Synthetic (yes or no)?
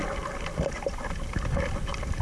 yes